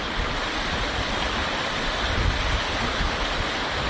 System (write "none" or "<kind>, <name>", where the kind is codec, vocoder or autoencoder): none